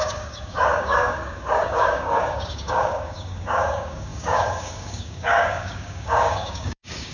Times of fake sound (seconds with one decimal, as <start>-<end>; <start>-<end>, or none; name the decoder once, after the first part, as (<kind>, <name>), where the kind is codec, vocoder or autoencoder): 0.0-7.1 (codec, DAC)